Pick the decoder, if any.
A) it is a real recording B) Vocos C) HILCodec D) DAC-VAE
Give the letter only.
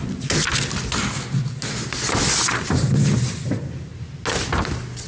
A